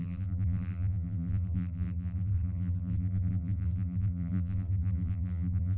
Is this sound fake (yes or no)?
yes